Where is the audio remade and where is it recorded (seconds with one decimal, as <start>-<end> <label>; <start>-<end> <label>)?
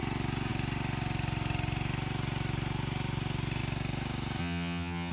0.0-4.4 recorded; 4.4-5.1 remade